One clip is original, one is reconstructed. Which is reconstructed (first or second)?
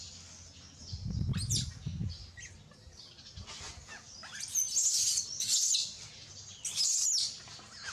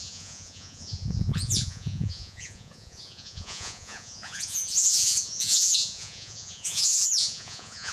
second